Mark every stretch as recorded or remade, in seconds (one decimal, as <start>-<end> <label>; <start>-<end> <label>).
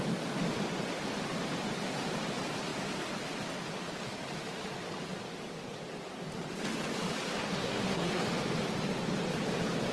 0.0-7.3 recorded; 7.3-8.2 remade; 8.2-9.9 recorded